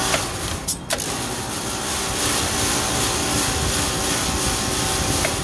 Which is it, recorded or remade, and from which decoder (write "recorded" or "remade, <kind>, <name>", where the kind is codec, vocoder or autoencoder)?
recorded